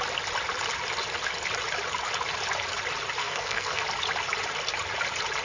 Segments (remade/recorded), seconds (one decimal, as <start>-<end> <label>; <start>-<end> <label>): 0.0-3.2 recorded; 3.2-3.8 remade; 3.8-5.4 recorded